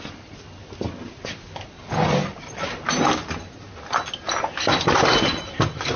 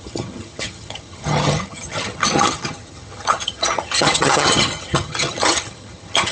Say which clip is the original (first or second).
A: first